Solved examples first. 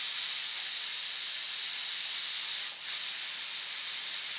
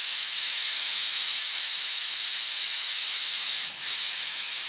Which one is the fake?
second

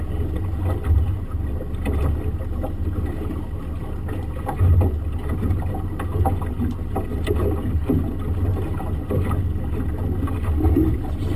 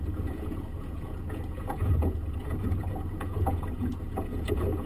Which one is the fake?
second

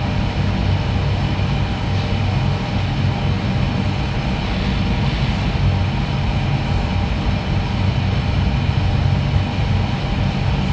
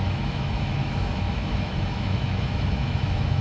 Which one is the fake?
second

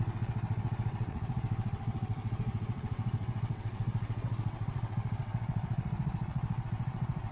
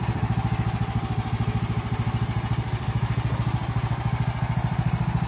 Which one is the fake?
first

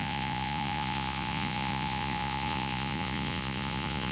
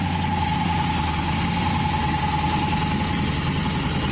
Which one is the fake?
first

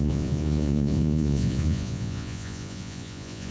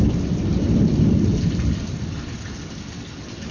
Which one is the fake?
first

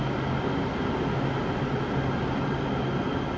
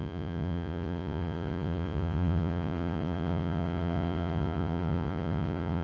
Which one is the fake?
second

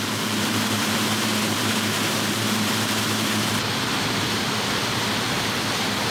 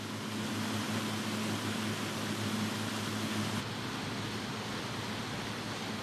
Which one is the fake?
first